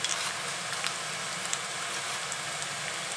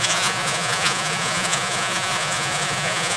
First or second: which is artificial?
second